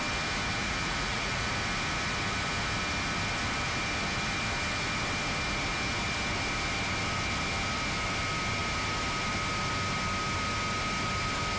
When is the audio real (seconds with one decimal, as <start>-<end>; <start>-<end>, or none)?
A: 0.0-0.6; 1.5-11.6

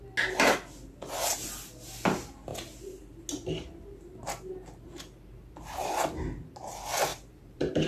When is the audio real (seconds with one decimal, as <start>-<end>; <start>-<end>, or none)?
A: 0.0-7.1

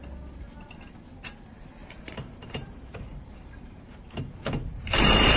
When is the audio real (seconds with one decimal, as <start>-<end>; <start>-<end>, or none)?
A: 0.0-1.8; 5.0-5.4

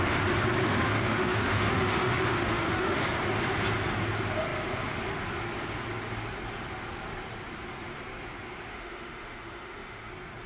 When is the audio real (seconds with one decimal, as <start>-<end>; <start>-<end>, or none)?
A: 0.0-0.6; 3.0-8.7; 10.1-10.5

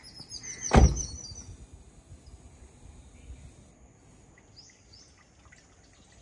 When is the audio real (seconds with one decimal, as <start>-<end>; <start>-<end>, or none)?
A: 0.0-6.2

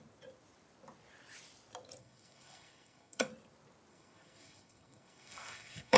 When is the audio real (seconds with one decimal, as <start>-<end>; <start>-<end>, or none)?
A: 0.0-2.0; 3.3-3.9